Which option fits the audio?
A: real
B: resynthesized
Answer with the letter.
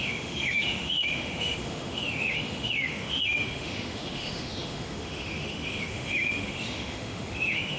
B